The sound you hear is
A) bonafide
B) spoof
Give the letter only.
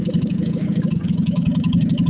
B